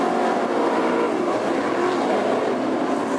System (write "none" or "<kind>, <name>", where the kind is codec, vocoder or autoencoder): none